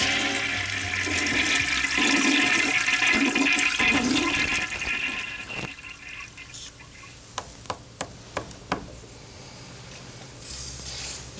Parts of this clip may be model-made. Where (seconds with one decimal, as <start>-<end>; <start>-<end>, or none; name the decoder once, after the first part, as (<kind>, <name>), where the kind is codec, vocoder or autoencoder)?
none